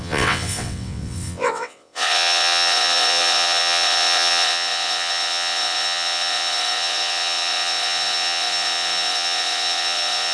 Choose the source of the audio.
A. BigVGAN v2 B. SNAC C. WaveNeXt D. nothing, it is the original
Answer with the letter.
C